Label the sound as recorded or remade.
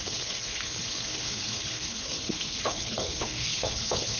remade